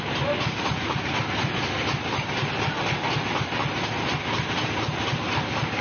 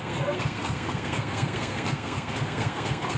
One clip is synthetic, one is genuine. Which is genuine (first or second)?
first